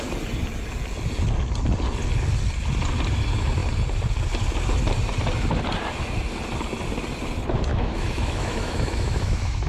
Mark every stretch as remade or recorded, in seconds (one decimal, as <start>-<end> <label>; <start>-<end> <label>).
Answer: 0.0-7.7 recorded; 7.7-9.7 remade